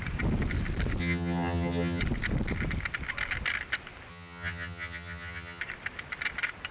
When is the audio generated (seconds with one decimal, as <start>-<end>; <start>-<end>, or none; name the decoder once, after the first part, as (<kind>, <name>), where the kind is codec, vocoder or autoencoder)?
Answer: 1.0-2.0 (vocoder, HiFi-GAN); 4.1-5.6